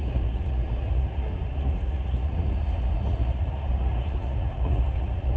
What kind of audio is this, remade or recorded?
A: remade